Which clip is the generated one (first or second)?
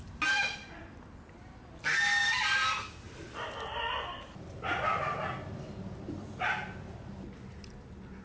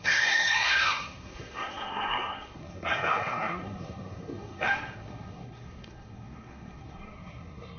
second